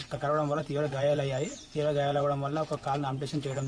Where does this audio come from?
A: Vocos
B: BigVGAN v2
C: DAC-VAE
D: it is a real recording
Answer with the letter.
A